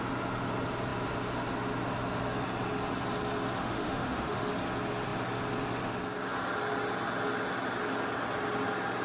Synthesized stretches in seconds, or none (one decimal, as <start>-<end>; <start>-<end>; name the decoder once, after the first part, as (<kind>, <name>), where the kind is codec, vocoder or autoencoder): 3.6-4.5 (autoencoder, DAC-VAE)